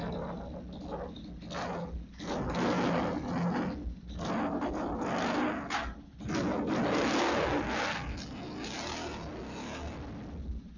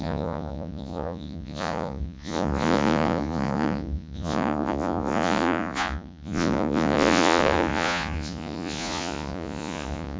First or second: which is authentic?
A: first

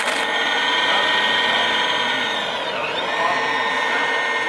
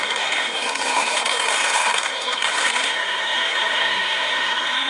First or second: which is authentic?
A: first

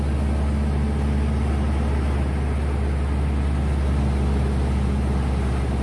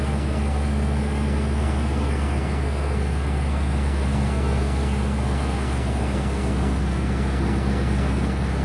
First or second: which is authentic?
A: first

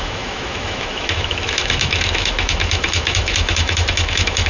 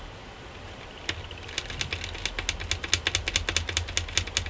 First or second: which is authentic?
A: second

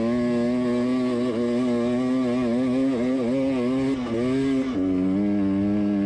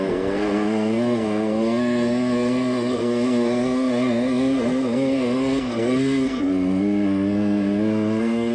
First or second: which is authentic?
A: first